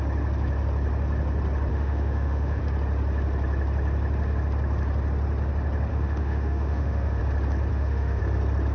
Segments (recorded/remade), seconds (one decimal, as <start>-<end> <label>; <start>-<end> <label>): 0.0-1.7 recorded; 1.7-2.6 remade; 2.6-5.9 recorded; 5.9-7.2 remade; 7.2-7.7 recorded; 7.7-8.2 remade; 8.2-8.7 recorded